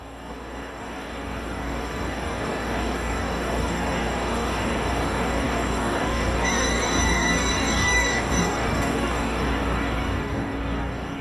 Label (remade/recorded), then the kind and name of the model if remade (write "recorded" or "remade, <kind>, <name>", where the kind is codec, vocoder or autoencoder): remade, codec, DAC